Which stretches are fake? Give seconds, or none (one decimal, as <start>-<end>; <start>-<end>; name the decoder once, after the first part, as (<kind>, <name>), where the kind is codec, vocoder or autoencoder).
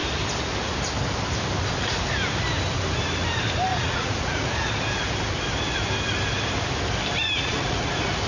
3.7-4.7 (vocoder, Vocos); 7.2-7.9